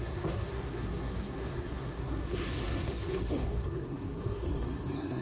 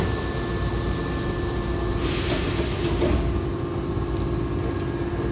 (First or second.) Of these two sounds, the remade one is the first